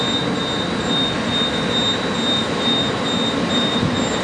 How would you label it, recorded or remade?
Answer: recorded